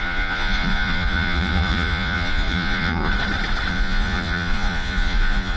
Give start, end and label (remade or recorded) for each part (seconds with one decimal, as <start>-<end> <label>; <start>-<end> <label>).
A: 0.0-3.1 remade; 3.1-3.7 recorded; 3.7-5.6 remade